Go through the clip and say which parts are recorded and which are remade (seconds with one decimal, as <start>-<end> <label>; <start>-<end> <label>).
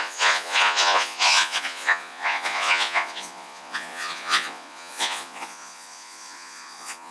0.0-7.1 remade